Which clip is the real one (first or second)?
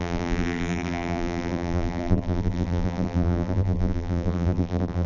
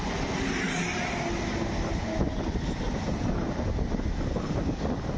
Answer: second